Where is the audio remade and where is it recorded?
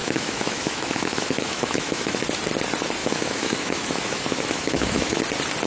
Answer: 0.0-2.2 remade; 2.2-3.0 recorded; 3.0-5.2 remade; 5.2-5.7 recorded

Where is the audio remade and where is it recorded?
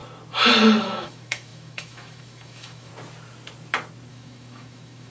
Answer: 0.0-0.8 recorded; 0.8-2.9 remade; 2.9-4.1 recorded; 4.1-5.1 remade